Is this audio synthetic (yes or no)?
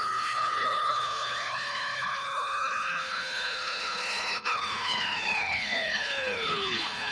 yes